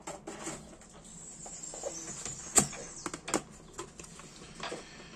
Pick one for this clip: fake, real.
real